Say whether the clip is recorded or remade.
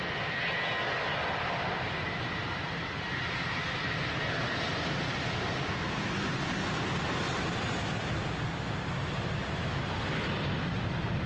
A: recorded